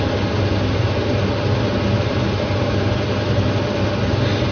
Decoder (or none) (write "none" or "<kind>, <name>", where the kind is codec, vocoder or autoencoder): none